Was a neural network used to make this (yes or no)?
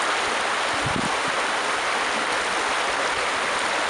no